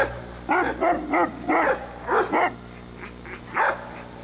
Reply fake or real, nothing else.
real